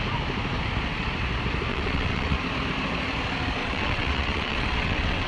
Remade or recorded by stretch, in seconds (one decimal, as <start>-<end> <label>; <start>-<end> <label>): 0.0-1.7 recorded; 1.7-2.4 remade; 2.4-3.6 recorded; 3.6-5.3 remade